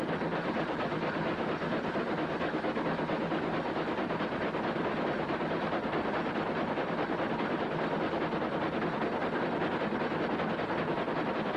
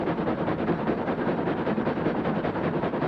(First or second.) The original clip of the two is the first